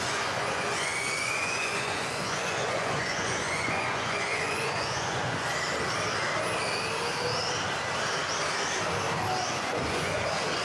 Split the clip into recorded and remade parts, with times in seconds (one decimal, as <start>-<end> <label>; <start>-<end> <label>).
0.0-5.5 remade; 5.5-9.5 recorded; 9.5-10.6 remade